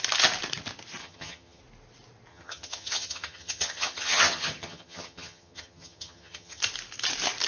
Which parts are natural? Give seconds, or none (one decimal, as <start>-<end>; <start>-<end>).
0.0-1.0; 1.6-2.3; 6.6-7.5